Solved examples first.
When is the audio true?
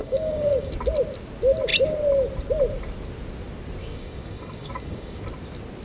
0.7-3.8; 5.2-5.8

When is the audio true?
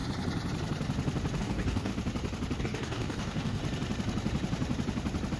0.0-1.4; 1.9-2.6; 3.6-5.4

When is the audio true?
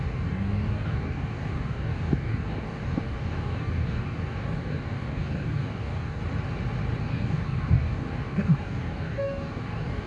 6.2-7.0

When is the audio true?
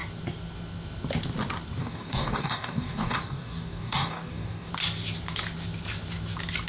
0.0-1.8; 4.7-6.7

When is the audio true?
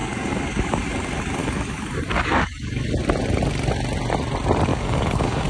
0.9-1.4; 2.9-4.7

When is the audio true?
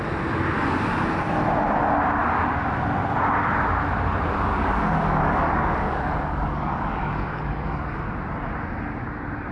0.0-4.5; 8.0-9.5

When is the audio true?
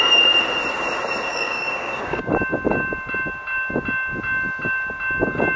0.0-1.3; 2.3-5.6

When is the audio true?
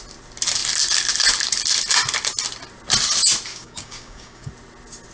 0.0-3.5; 4.5-5.1